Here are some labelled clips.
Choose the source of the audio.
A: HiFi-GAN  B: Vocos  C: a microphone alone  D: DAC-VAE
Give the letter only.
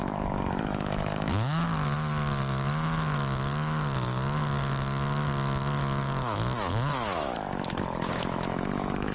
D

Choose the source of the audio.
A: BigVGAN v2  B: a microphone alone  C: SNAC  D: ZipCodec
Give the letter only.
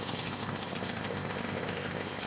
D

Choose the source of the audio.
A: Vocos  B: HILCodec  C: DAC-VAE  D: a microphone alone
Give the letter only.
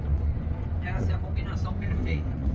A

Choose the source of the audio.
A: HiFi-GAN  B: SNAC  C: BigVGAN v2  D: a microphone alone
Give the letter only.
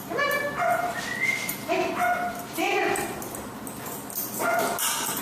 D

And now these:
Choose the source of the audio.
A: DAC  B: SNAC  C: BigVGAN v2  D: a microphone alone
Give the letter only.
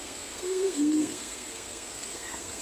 B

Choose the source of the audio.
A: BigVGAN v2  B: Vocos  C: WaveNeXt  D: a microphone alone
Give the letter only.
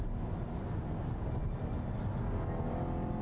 D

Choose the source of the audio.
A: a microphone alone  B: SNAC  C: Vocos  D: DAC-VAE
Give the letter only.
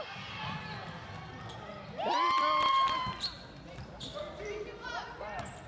A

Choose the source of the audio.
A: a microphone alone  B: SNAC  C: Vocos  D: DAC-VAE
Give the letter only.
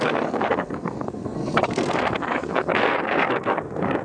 B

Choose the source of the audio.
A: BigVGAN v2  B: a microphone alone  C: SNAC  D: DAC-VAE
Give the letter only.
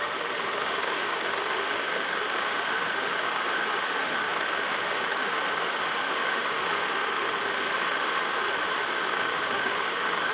D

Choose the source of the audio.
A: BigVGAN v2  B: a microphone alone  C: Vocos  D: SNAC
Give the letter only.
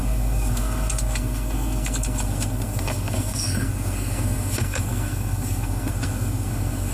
D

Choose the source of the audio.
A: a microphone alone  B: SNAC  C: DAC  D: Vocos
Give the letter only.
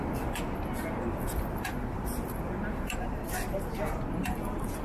A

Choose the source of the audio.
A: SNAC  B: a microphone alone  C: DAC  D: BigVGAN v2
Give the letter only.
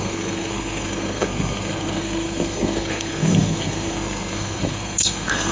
A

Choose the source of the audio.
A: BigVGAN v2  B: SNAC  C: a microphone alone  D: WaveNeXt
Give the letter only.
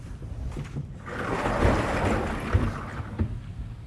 C